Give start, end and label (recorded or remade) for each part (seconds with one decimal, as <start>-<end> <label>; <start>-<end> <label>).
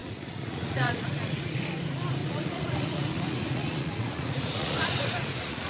0.0-1.6 remade; 1.6-2.2 recorded; 2.2-5.7 remade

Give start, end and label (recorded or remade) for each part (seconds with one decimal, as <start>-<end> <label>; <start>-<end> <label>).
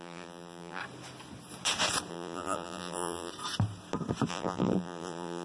0.0-0.8 remade; 0.8-2.1 recorded; 2.1-3.3 remade; 3.3-4.3 recorded; 4.3-5.4 remade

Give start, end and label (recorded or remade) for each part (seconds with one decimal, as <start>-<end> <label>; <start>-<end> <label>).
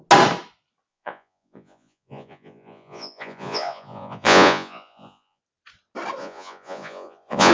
0.0-0.9 recorded; 0.9-5.4 remade; 5.4-6.2 recorded; 6.2-7.5 remade